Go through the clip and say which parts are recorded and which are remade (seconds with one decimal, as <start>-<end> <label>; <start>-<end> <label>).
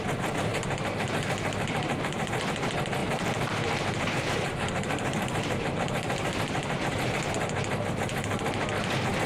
0.0-0.5 recorded; 0.5-2.3 remade; 2.3-3.0 recorded; 3.0-7.3 remade; 7.3-9.3 recorded